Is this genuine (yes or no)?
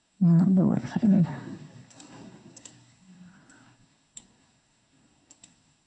no